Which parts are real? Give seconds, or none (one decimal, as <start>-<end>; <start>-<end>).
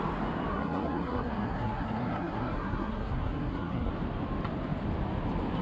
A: 0.0-0.5; 3.9-5.6